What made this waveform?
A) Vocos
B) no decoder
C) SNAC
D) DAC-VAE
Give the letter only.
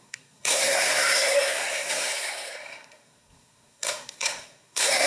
C